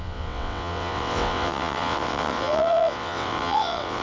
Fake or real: fake